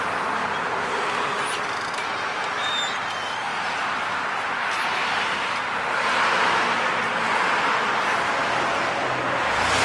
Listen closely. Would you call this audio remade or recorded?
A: recorded